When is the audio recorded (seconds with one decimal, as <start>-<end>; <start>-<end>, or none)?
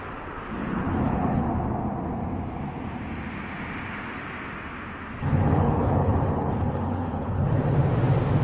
0.0-0.6; 1.4-5.2; 7.6-8.4